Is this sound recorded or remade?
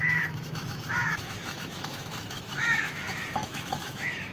remade